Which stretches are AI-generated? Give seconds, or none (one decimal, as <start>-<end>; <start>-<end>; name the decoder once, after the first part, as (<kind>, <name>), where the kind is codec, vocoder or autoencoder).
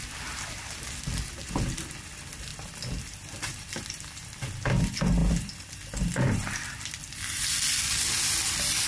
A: 2.5-4.0 (vocoder, BigVGAN v2); 5.2-7.8